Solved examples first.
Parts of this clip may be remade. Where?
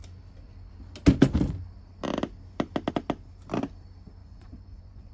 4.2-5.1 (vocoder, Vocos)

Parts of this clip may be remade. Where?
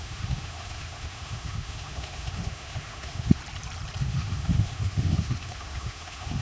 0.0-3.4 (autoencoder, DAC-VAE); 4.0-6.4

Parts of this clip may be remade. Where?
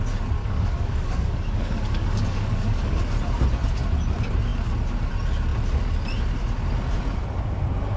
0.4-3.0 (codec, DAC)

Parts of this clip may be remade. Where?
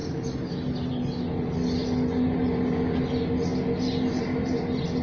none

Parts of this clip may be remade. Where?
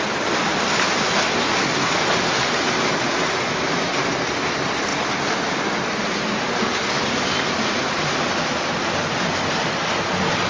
none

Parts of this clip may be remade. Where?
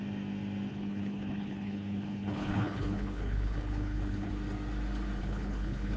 0.7-4.3 (codec, HILCodec); 5.2-6.0